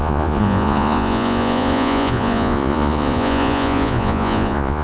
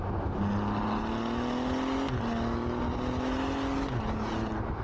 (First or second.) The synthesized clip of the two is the first